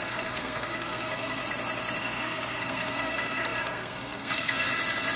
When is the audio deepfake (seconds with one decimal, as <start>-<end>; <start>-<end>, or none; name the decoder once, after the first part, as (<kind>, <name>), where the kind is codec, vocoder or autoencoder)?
0.0-1.4 (codec, SNAC); 2.0-4.7